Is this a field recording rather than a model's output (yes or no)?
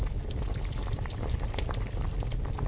yes